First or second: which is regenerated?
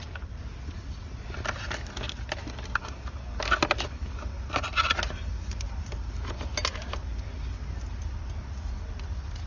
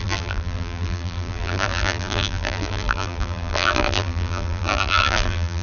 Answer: second